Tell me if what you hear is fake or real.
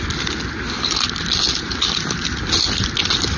real